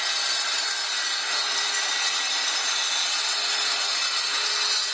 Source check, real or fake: real